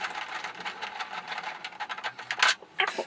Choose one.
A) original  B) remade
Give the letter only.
A